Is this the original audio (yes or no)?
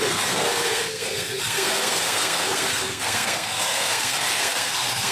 no